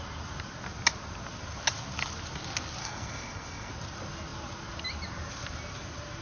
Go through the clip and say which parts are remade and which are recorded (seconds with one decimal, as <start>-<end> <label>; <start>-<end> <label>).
0.0-2.8 recorded; 2.8-3.7 remade; 3.7-6.2 recorded